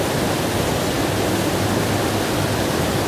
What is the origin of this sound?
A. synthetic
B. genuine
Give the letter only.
B